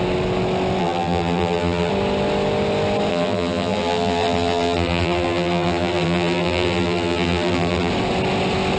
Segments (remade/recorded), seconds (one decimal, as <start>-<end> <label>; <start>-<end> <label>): 0.0-0.8 recorded; 0.8-1.9 remade; 1.9-3.1 recorded; 3.1-7.9 remade; 7.9-8.8 recorded